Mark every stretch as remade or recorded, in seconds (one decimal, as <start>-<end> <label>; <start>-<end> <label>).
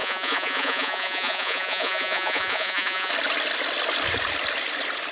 0.0-3.1 remade; 3.1-5.1 recorded